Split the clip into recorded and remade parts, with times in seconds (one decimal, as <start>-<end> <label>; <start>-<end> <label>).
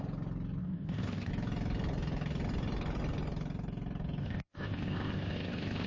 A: 0.0-0.6 recorded; 0.6-1.3 remade; 1.3-4.2 recorded; 4.2-5.9 remade